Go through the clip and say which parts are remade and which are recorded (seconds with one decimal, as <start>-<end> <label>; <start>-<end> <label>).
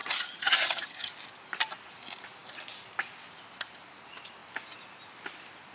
0.0-1.1 remade; 1.1-5.7 recorded